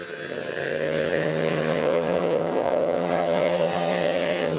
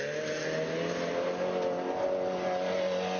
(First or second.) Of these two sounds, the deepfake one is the first